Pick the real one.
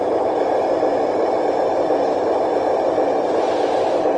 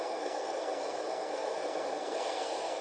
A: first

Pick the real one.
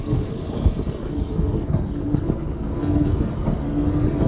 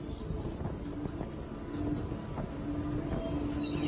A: second